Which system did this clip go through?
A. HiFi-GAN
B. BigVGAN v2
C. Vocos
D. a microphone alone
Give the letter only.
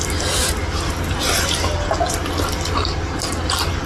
D